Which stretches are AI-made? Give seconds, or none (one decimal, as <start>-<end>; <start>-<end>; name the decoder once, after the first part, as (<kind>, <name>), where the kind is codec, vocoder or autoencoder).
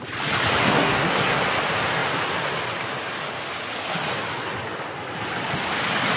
0.6-1.4 (codec, SNAC)